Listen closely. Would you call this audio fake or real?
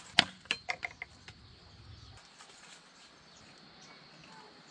real